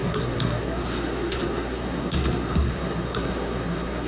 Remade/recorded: remade